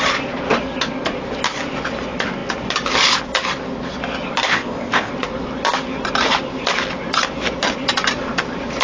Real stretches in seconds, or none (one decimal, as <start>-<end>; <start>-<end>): 0.0-4.5; 5.1-8.8